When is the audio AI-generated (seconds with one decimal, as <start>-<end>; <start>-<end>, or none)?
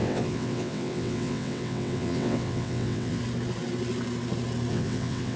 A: 0.0-3.2; 4.7-5.4